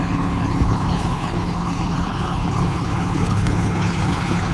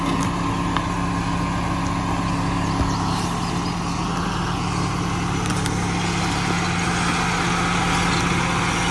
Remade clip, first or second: first